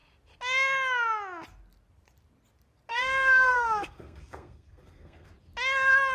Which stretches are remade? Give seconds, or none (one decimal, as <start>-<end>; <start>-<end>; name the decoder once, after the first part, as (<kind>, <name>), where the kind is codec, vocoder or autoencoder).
2.9-5.3 (codec, SNAC)